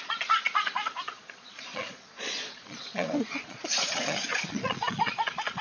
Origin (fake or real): fake